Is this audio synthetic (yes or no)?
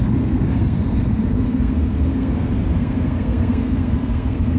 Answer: yes